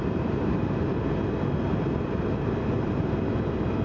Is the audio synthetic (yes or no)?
no